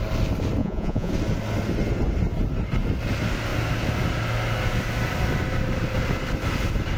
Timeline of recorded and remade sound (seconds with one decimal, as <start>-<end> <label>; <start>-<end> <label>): 0.0-0.6 recorded; 0.6-1.1 remade; 1.1-7.0 recorded